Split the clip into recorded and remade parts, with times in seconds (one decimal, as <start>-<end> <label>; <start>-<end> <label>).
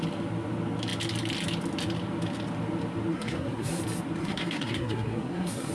0.0-3.1 recorded; 3.1-3.8 remade; 3.8-4.2 recorded; 4.2-5.7 remade